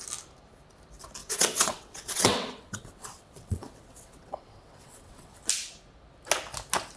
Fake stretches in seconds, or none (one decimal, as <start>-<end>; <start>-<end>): 1.2-5.4